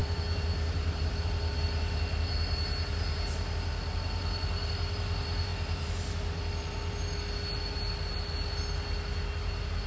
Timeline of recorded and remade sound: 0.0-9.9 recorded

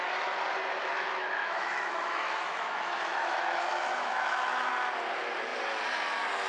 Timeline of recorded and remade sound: 0.0-0.8 recorded; 0.8-4.7 remade; 4.7-6.5 recorded